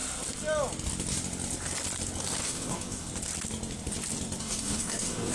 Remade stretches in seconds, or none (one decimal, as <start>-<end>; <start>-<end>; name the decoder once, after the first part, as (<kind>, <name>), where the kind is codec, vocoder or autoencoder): 2.4-3.1 (codec, DAC); 4.4-5.3